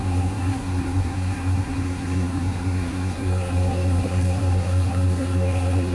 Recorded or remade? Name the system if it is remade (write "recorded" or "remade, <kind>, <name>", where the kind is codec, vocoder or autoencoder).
remade, codec, SNAC